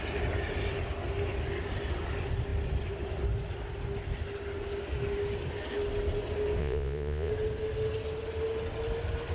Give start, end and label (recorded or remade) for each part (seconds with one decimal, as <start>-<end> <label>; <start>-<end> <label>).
0.0-6.6 recorded; 6.6-7.3 remade; 7.3-9.3 recorded